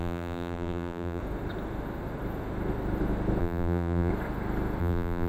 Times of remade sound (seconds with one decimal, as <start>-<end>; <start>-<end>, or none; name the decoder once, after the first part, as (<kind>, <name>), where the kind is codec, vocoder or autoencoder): 0.0-1.2 (vocoder, BigVGAN v2); 3.4-4.1; 4.8-5.3